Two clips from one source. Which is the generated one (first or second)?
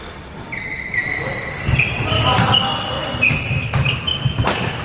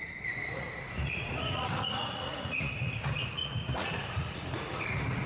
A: second